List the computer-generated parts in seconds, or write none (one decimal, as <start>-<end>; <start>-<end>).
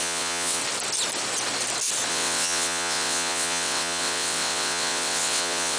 0.0-0.6; 2.1-5.8